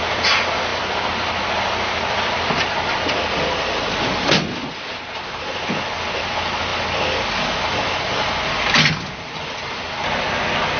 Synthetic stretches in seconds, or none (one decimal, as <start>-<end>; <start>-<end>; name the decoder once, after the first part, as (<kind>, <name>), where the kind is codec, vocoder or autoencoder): none

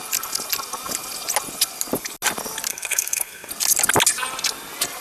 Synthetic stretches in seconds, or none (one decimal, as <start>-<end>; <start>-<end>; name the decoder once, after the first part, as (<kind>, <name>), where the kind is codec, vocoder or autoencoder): 2.7-3.5 (codec, SNAC)